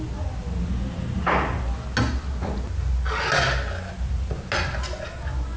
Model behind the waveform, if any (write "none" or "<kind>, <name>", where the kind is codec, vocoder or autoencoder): none